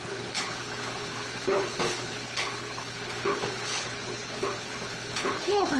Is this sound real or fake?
fake